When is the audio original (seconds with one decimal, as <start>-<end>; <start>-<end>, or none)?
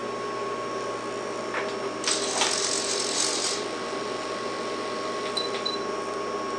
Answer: 0.0-6.6